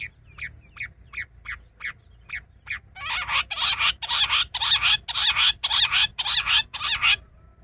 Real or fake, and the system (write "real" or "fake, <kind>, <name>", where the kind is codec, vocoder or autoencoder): real